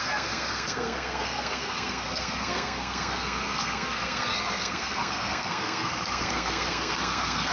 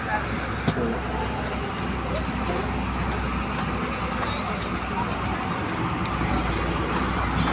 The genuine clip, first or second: second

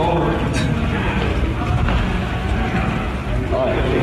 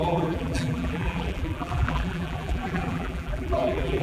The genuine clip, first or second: first